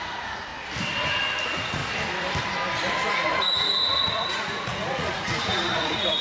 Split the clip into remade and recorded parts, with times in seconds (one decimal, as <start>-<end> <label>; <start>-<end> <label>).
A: 0.0-0.5 remade; 0.5-1.4 recorded; 1.4-1.8 remade; 1.8-3.1 recorded; 3.1-6.2 remade